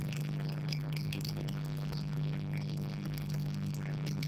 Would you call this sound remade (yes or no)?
yes